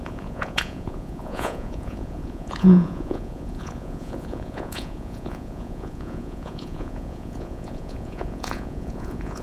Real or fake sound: fake